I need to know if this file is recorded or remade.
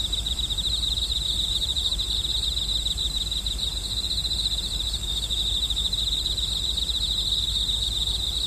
remade